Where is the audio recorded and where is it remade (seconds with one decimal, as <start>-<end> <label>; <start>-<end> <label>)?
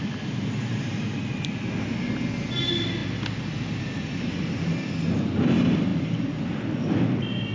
0.0-7.5 recorded